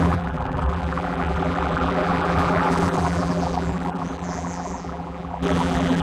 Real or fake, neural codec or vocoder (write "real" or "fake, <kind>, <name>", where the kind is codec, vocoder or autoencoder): fake, vocoder, BigVGAN v2